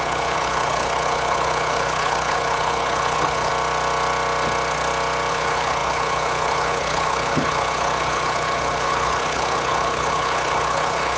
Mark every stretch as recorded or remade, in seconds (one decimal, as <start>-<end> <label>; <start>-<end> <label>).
0.0-3.5 remade; 3.5-5.3 recorded; 5.3-11.2 remade